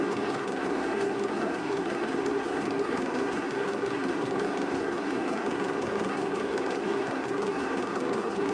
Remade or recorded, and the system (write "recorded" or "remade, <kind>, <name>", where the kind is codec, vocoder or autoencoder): remade, codec, SNAC